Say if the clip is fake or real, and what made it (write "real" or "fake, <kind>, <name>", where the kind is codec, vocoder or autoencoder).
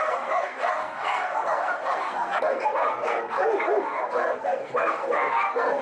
fake, codec, SNAC